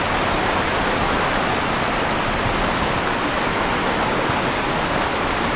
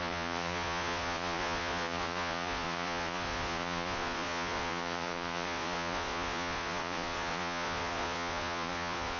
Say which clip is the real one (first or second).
first